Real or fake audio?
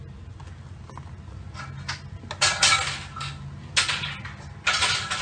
real